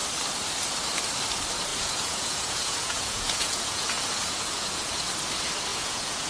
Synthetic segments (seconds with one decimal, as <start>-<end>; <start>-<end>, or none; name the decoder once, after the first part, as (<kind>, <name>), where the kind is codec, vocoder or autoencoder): 1.7-5.1 (vocoder, Vocos); 5.7-6.3